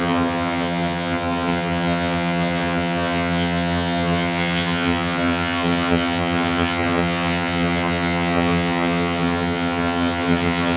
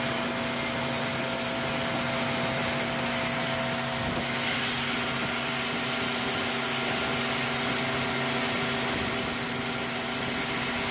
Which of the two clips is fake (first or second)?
first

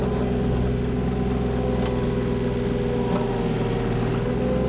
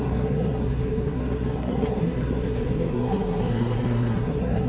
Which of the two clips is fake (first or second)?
second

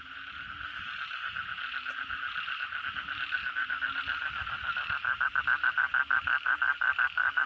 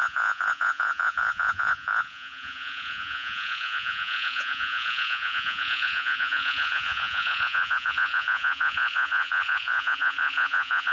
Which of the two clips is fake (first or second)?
second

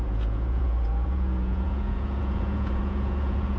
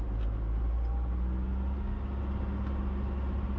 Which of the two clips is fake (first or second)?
first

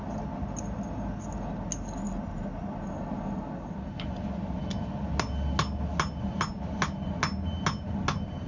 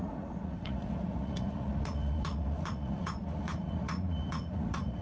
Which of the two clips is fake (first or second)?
second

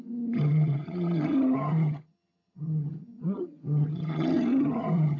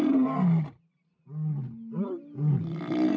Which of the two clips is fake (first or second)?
first